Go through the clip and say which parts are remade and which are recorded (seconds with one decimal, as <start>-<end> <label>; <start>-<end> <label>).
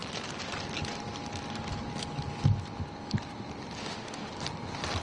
0.0-3.8 recorded; 3.8-4.3 remade; 4.3-5.0 recorded